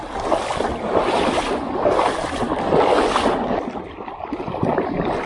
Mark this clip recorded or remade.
recorded